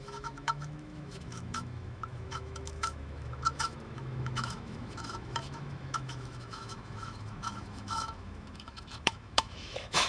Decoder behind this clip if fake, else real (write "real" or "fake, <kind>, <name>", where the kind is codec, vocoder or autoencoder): fake, autoencoder, DAC-VAE